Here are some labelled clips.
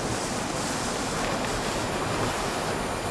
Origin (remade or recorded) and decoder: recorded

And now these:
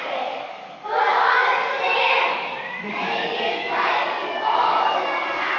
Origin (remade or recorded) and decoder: remade, codec, DAC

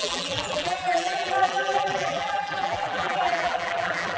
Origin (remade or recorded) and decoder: remade, vocoder, BigVGAN v2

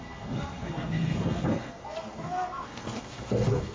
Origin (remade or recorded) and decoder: remade, codec, SNAC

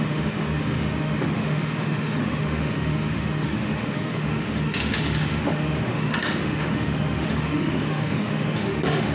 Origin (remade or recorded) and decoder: remade, autoencoder, DAC-VAE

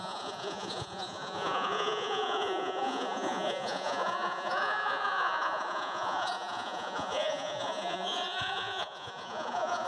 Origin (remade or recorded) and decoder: remade, vocoder, Vocos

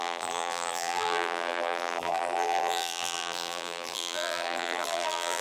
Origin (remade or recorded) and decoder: remade, vocoder, BigVGAN v2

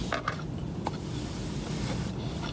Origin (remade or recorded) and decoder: recorded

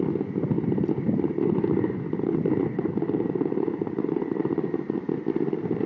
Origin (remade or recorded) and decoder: recorded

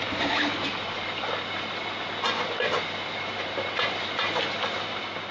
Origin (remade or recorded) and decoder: recorded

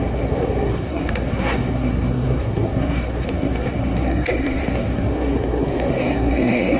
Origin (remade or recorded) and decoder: remade, codec, SNAC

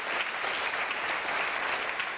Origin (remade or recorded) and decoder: recorded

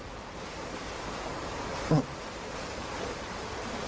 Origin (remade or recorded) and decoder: remade, vocoder, BigVGAN v2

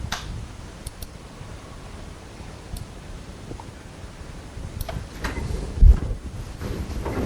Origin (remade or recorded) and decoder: remade, vocoder, BigVGAN v2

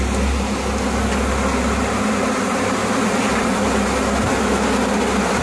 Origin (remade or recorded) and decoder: recorded